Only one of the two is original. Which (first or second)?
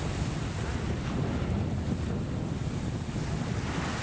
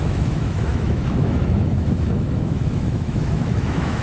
first